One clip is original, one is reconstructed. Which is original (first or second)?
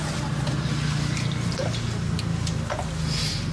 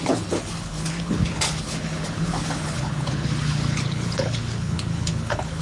first